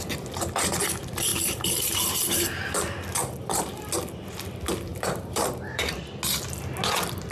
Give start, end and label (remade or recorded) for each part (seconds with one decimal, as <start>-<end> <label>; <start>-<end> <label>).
0.0-1.3 recorded; 1.3-2.6 remade; 2.6-3.2 recorded; 3.2-3.9 remade; 3.9-4.9 recorded; 4.9-6.0 remade; 6.0-7.3 recorded